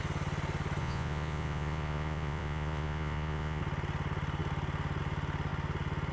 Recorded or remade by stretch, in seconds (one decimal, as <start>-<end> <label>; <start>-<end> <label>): 0.0-0.8 recorded; 0.8-3.6 remade; 3.6-6.1 recorded

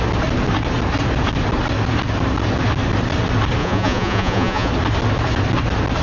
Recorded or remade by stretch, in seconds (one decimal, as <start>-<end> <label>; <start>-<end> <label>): 0.0-3.6 recorded; 3.6-4.7 remade; 4.7-6.0 recorded

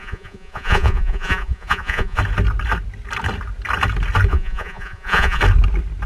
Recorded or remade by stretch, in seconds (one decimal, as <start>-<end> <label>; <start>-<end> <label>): 0.0-2.2 remade; 2.2-4.3 recorded; 4.3-5.4 remade; 5.4-6.1 recorded

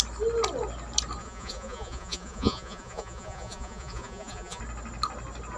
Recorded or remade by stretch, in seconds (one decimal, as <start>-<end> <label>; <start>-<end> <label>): 0.0-1.2 recorded; 1.2-4.6 remade; 4.6-5.6 recorded

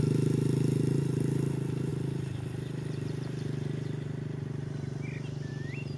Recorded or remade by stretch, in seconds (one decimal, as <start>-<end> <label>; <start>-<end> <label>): 0.0-6.0 recorded